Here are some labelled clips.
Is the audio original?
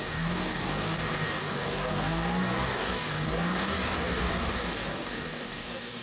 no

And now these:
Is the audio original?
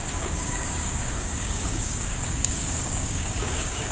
no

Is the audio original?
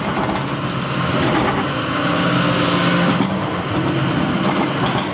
yes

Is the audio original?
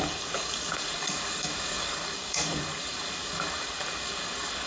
no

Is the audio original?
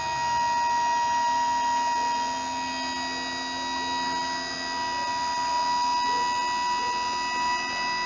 yes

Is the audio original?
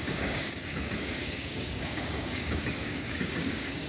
no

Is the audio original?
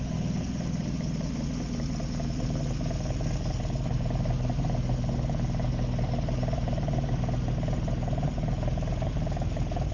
yes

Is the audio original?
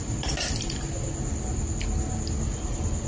yes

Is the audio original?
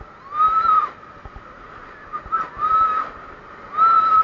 yes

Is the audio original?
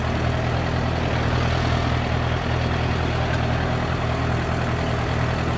yes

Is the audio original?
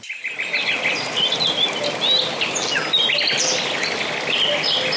yes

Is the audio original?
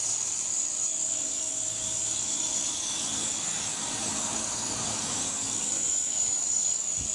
no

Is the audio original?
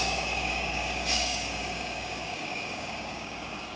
no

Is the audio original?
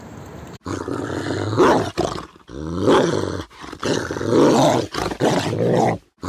yes